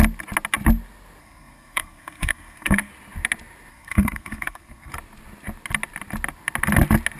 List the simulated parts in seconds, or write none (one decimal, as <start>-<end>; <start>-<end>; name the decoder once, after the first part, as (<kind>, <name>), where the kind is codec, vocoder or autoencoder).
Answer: 1.2-2.9 (codec, SNAC); 3.7-4.9